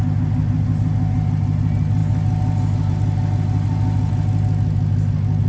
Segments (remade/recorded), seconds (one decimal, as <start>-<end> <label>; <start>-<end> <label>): 0.0-5.5 recorded

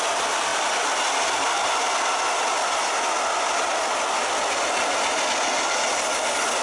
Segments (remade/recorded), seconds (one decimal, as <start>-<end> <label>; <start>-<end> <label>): 0.0-6.6 recorded

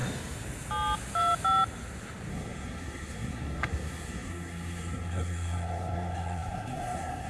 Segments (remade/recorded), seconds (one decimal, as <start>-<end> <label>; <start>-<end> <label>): 0.0-2.3 recorded; 2.3-7.3 remade

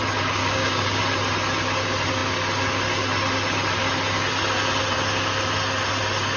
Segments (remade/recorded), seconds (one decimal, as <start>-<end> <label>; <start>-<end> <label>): 0.0-0.4 recorded; 0.4-1.0 remade; 1.0-6.4 recorded

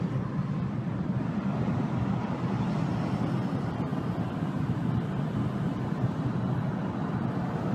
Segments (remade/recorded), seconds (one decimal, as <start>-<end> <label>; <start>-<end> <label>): 0.0-7.7 recorded